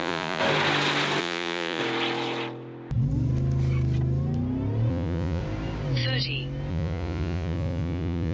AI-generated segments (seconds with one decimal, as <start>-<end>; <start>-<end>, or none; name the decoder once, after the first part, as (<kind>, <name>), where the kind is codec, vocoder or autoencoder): 0.0-0.4 (vocoder, Vocos); 1.2-1.8; 4.9-5.4; 6.7-8.3